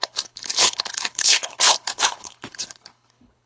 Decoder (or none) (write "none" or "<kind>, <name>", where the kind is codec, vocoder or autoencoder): codec, HILCodec